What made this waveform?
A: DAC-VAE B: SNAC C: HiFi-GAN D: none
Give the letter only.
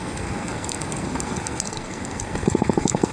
B